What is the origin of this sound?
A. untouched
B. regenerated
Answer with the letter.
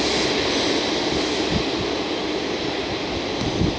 A